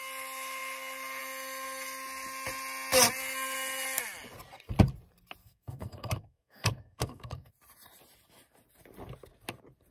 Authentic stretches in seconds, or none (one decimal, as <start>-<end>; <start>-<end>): 0.0-5.4; 7.5-9.9